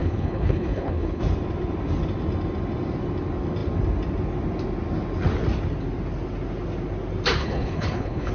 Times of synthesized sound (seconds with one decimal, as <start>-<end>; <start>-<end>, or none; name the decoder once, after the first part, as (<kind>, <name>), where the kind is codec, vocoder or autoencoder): 0.0-1.2 (codec, HILCodec); 7.4-8.3